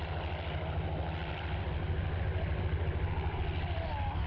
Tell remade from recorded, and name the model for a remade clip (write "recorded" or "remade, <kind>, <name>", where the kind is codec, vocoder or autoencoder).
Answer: recorded